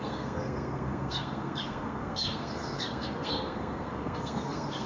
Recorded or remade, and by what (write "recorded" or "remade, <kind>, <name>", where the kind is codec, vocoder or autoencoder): remade, codec, SNAC